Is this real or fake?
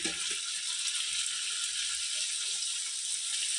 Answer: real